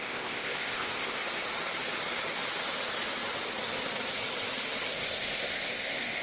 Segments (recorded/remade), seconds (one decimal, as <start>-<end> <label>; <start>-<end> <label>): 0.0-1.2 remade; 1.2-4.9 recorded; 4.9-6.2 remade